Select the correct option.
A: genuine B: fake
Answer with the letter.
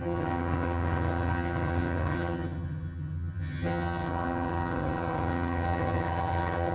B